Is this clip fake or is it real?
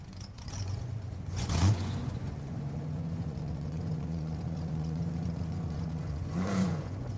fake